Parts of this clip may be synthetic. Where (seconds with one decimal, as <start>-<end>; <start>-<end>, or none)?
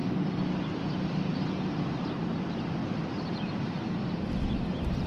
1.9-2.8; 4.6-5.1